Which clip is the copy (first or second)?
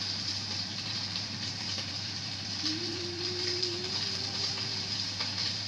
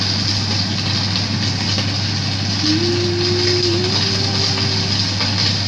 first